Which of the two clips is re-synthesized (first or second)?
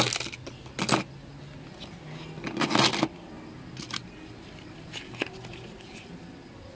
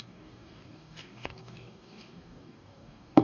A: second